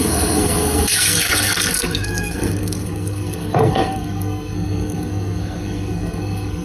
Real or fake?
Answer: fake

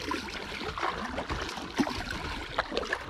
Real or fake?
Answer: real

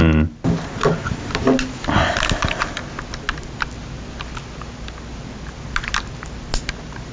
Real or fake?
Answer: real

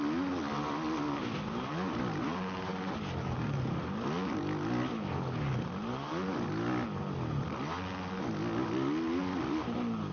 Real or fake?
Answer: real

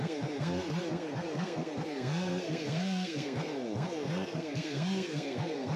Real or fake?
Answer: fake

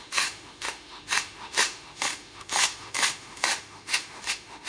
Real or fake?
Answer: fake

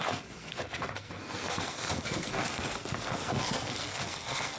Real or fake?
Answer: fake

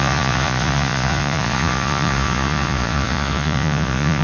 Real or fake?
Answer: fake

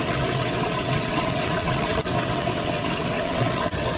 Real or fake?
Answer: fake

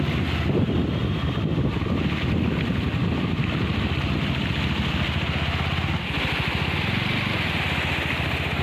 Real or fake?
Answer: real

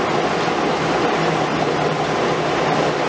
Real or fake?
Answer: real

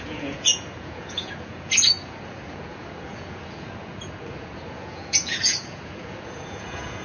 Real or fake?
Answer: fake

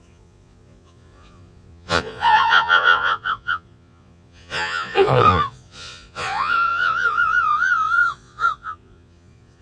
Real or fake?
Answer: fake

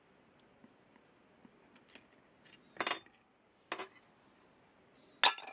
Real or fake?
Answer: real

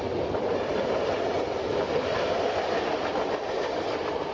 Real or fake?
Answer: real